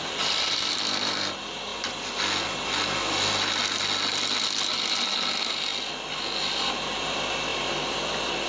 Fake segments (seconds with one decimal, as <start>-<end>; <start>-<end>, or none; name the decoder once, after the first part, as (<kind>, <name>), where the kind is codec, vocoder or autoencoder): 0.0-1.7 (vocoder, BigVGAN v2); 4.7-5.7; 6.4-8.5